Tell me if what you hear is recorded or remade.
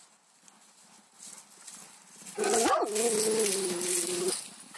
recorded